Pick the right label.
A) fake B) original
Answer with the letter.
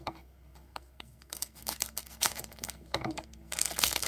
A